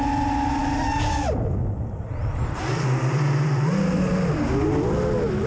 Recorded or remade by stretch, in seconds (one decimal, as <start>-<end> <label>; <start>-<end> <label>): 0.0-2.2 recorded; 2.2-3.8 remade; 3.8-5.5 recorded